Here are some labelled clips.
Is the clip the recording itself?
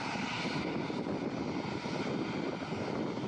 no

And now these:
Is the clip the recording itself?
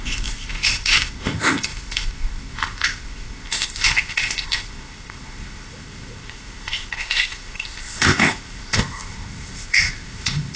no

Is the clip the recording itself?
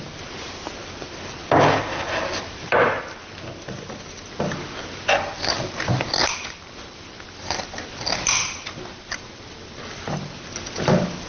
yes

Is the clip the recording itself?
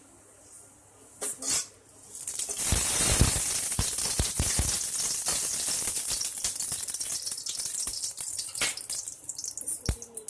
yes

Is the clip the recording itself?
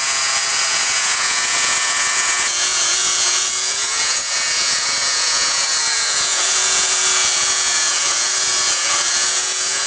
no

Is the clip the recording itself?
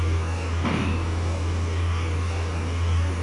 no